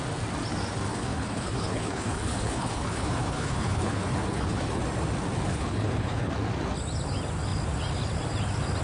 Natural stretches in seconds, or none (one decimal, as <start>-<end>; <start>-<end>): 0.0-0.9; 4.8-5.5; 6.3-8.8